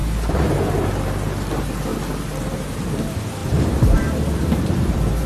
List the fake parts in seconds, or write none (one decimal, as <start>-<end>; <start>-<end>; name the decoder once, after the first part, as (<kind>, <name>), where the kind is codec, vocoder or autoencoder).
0.0-1.9 (vocoder, BigVGAN v2); 2.4-5.3